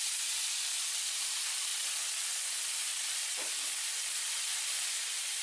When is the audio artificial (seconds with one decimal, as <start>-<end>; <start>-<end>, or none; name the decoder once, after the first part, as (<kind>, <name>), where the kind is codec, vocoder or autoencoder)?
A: 0.0-1.7 (vocoder, BigVGAN v2); 2.4-2.9; 3.5-5.4